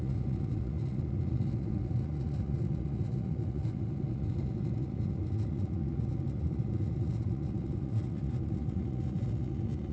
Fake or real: fake